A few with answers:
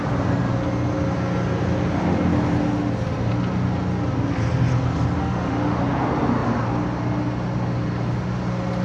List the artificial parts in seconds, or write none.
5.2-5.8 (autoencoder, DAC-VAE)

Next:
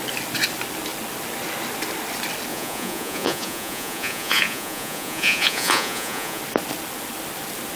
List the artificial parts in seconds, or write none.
2.5-6.4 (vocoder, Vocos)

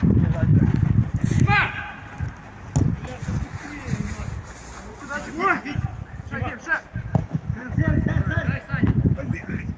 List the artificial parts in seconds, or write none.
7.1-7.6 (autoencoder, DAC-VAE)